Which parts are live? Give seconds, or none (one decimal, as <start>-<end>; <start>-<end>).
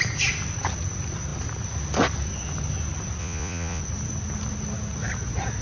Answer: 0.0-3.2; 3.8-5.6